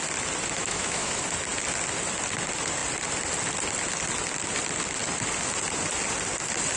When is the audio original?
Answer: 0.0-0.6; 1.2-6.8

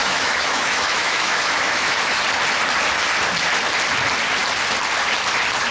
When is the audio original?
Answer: 2.2-5.7

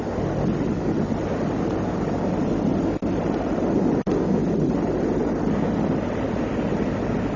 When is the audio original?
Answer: 0.0-7.4

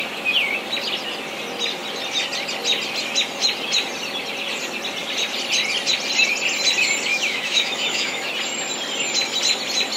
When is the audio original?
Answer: 0.0-7.1; 8.3-10.0

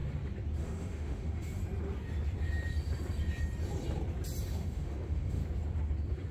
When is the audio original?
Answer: 0.0-0.6; 1.6-4.5; 5.4-6.3

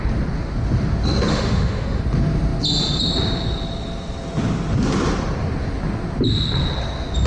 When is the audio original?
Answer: 0.0-1.3; 2.0-7.3

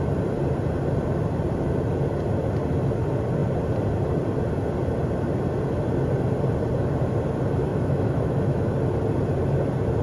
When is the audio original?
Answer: 0.0-7.7; 8.7-10.0

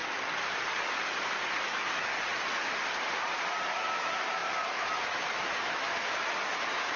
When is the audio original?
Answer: 0.0-1.6; 2.1-3.7